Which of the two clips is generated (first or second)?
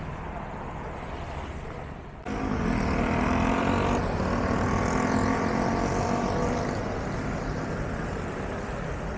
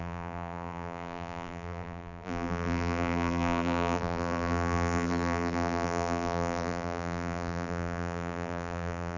second